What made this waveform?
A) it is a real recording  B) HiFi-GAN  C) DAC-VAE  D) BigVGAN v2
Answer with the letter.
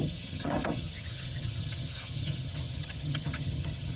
B